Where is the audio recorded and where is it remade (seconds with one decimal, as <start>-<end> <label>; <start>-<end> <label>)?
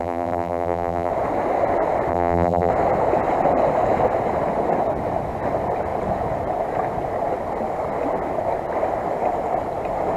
0.0-1.1 remade; 1.1-2.1 recorded; 2.1-2.7 remade; 2.7-10.2 recorded